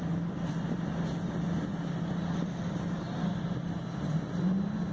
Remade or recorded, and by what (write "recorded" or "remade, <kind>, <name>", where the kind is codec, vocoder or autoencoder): recorded